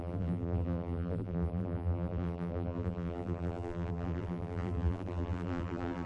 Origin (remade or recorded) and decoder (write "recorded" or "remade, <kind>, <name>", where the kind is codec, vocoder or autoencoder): remade, vocoder, BigVGAN v2